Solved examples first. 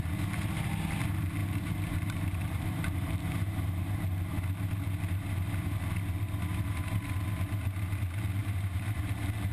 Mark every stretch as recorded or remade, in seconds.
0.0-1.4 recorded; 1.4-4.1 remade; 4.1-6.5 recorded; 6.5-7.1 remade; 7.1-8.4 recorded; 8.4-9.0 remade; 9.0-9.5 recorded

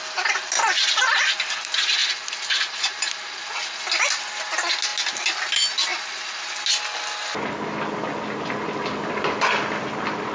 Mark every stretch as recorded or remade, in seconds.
0.0-2.0 recorded; 2.0-3.5 remade; 3.5-10.3 recorded

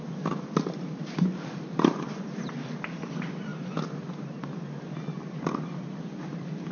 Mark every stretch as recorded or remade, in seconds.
0.0-3.5 remade; 3.5-5.9 recorded; 5.9-6.7 remade

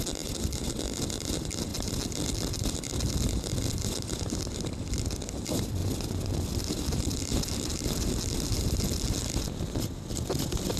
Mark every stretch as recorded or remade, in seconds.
0.0-5.8 recorded; 5.8-6.6 remade; 6.6-10.8 recorded

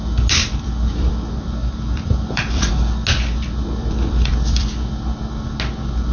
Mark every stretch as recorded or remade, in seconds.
0.0-0.4 recorded; 0.4-2.7 remade; 2.7-3.8 recorded; 3.8-4.7 remade; 4.7-6.1 recorded